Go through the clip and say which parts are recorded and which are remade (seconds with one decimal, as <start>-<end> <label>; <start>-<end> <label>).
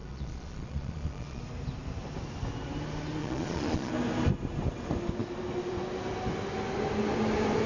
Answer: 0.0-1.4 remade; 1.4-3.2 recorded; 3.2-3.9 remade; 3.9-7.7 recorded